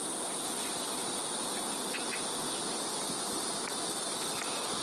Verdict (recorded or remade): recorded